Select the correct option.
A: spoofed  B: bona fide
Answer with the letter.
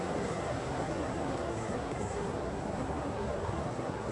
A